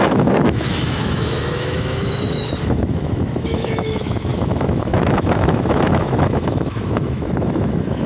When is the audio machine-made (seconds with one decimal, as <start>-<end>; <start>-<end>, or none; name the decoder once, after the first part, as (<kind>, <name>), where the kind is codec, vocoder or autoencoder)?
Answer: 0.0-8.1 (autoencoder, DAC-VAE)